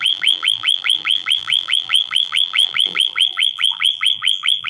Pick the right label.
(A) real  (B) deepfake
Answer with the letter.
B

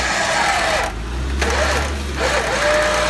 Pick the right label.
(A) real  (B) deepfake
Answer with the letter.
A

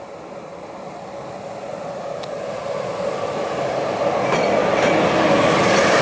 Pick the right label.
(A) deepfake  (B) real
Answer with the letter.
B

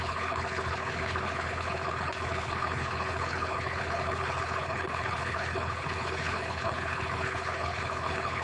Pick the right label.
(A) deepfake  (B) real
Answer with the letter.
A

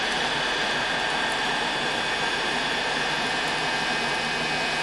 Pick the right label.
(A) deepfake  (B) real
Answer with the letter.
B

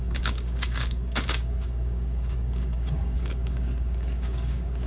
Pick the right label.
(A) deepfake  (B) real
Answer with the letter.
A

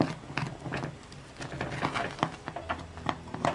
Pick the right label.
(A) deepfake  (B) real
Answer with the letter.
B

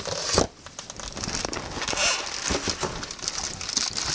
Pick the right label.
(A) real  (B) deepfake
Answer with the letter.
A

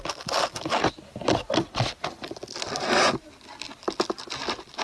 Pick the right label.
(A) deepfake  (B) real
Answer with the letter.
B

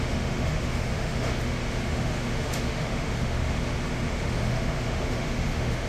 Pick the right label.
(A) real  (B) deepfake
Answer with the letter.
B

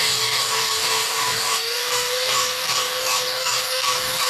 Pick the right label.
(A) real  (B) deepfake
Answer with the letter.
B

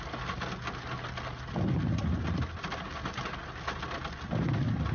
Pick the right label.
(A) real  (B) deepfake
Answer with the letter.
A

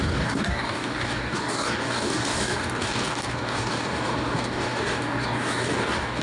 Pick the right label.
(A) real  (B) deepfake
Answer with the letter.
B